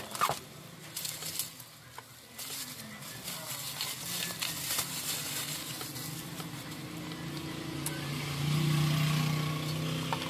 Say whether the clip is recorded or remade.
recorded